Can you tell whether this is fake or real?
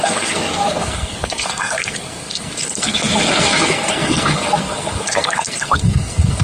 fake